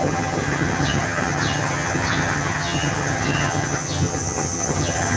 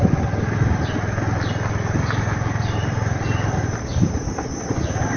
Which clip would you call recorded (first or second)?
second